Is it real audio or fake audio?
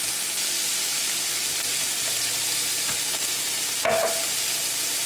real